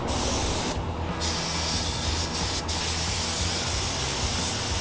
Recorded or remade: recorded